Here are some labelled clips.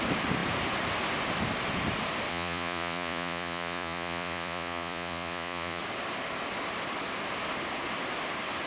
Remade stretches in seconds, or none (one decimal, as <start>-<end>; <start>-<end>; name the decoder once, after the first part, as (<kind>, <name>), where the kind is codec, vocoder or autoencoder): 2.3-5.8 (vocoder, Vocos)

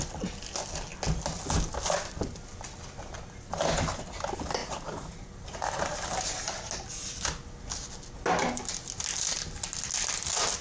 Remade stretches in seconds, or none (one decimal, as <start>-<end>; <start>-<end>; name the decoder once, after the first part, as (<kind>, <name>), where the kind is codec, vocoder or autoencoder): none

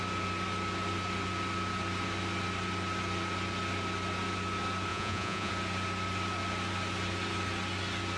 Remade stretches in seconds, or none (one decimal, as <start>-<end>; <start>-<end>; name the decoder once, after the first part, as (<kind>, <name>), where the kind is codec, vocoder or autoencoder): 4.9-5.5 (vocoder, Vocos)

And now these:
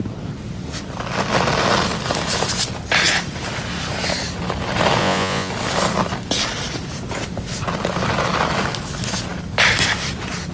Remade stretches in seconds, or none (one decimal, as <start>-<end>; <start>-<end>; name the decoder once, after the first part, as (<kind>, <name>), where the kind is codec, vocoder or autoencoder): 5.0-5.5 (vocoder, Vocos)

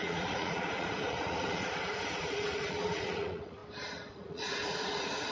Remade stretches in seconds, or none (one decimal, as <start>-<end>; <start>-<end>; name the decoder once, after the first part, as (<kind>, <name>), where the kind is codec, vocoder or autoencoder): 0.0-3.6 (vocoder, Vocos); 4.1-5.3